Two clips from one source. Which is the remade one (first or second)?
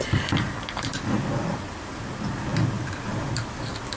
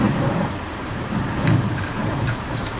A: second